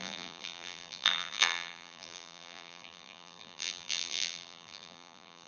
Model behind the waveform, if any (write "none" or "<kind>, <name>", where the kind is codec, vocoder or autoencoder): vocoder, BigVGAN v2